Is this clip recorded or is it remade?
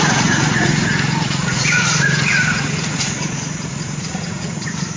remade